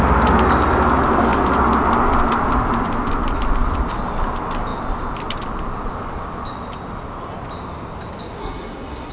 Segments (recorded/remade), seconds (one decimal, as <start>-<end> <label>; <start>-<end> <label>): 0.0-8.4 recorded; 8.4-9.1 remade

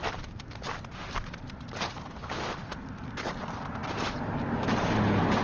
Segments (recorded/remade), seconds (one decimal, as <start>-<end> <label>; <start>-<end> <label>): 0.0-3.2 remade; 3.2-5.4 recorded